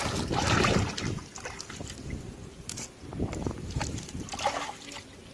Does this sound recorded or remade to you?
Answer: recorded